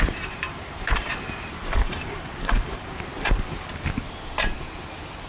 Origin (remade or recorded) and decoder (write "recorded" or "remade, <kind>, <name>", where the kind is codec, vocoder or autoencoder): remade, vocoder, BigVGAN v2